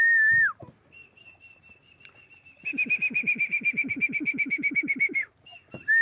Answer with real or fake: real